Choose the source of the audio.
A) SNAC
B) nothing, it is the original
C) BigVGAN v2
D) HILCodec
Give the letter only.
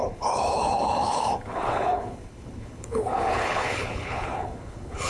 D